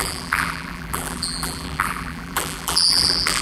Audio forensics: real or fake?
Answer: fake